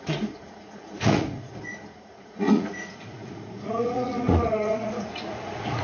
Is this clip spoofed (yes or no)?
yes